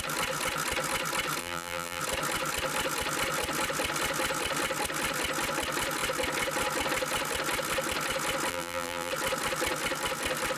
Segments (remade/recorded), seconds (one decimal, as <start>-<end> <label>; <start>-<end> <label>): 0.0-1.4 recorded; 1.4-2.0 remade; 2.0-8.5 recorded; 8.5-9.1 remade; 9.1-10.6 recorded